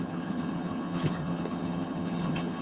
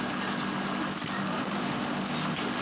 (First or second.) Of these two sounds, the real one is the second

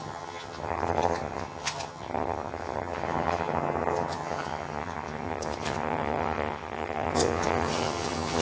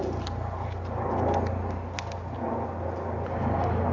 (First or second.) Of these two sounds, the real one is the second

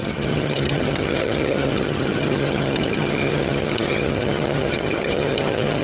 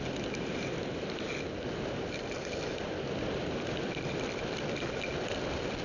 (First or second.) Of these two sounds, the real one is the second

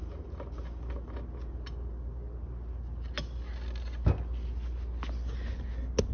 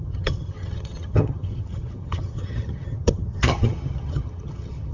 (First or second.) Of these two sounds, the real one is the first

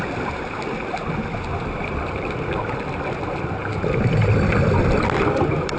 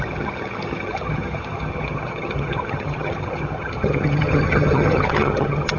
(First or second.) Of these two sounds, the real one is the first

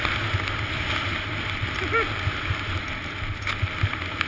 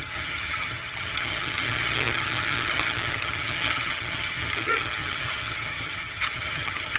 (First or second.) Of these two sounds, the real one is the first